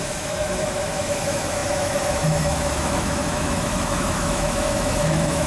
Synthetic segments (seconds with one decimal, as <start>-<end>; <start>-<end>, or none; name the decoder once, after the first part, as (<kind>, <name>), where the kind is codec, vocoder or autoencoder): 0.0-5.5 (autoencoder, DAC-VAE)